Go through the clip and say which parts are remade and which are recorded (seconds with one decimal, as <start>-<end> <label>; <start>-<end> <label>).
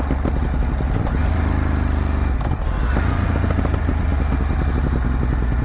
0.0-5.6 recorded